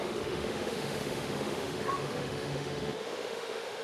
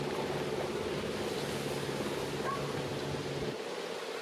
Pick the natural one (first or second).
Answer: second